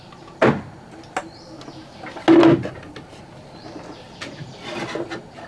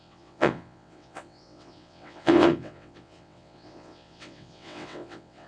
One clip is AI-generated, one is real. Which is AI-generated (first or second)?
second